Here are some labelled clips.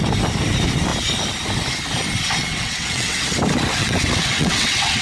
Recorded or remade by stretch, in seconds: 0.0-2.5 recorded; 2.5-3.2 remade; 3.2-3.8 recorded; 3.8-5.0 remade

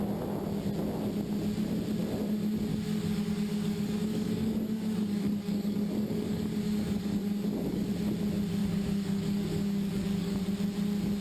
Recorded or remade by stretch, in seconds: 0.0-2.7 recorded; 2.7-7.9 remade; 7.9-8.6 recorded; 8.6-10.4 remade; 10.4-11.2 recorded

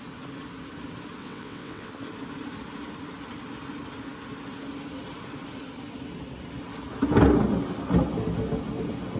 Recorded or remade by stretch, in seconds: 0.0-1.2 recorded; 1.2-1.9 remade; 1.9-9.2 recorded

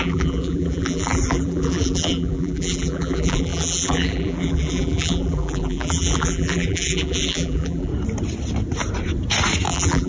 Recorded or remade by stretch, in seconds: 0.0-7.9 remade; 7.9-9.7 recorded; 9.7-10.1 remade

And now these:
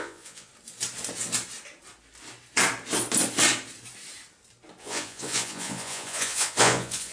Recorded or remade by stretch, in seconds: 0.0-0.5 remade; 0.5-4.8 recorded; 4.8-7.1 remade

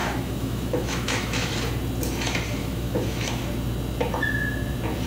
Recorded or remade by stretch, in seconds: 0.0-1.5 remade; 1.5-2.6 recorded; 2.6-3.4 remade; 3.4-5.1 recorded

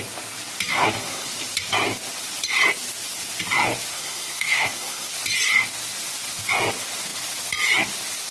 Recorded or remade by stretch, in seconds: 0.0-0.7 recorded; 0.7-1.3 remade; 1.3-3.9 recorded; 3.9-5.1 remade; 5.1-8.3 recorded

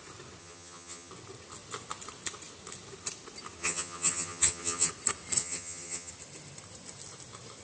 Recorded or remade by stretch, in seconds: 0.0-0.4 recorded; 0.4-1.1 remade; 1.1-3.6 recorded; 3.6-4.9 remade; 4.9-5.4 recorded; 5.4-6.1 remade; 6.1-7.6 recorded